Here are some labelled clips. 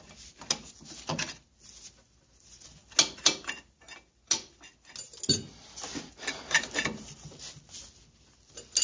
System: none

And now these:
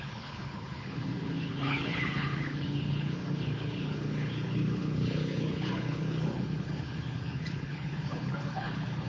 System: codec, HILCodec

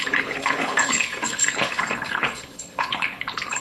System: codec, HILCodec